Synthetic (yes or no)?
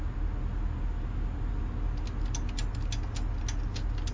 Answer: no